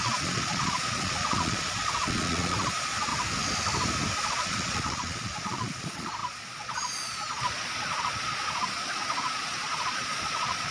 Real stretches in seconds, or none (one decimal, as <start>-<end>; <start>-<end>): 3.1-4.2